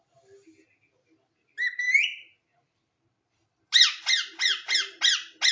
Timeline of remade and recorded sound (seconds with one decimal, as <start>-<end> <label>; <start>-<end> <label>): 0.0-5.5 recorded